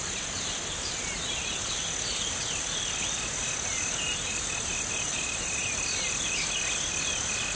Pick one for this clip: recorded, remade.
recorded